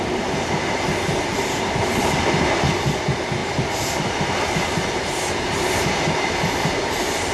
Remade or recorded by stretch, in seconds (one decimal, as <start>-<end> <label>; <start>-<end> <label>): 0.0-7.3 recorded